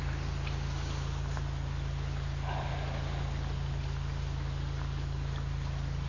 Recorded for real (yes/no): yes